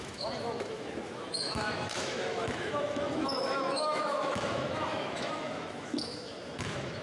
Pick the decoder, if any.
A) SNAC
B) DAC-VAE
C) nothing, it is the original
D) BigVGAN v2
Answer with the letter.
B